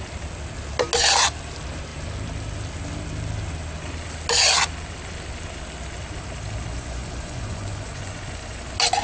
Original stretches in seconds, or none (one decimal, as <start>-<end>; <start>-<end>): 0.0-6.7; 8.6-9.0